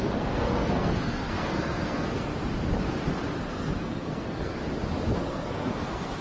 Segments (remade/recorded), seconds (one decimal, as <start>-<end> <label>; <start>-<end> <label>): 0.0-2.3 remade; 2.3-3.4 recorded; 3.4-4.6 remade; 4.6-5.2 recorded; 5.2-6.2 remade